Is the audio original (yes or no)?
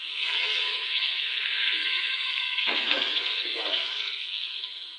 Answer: no